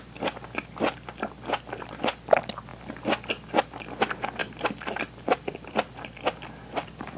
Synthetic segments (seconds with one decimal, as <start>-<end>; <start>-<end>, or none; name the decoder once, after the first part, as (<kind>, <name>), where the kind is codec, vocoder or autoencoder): 4.4-7.2 (vocoder, BigVGAN v2)